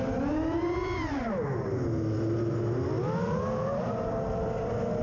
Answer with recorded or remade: recorded